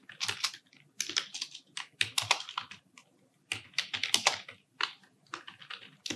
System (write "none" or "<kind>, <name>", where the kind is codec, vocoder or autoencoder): none